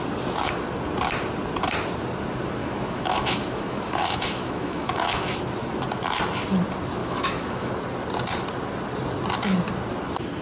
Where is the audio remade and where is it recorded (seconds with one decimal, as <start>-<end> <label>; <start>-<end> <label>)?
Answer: 0.0-2.6 recorded; 2.6-5.4 remade; 5.4-7.0 recorded; 7.0-7.7 remade; 7.7-10.4 recorded